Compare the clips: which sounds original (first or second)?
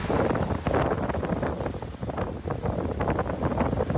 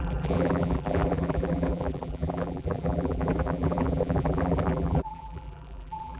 first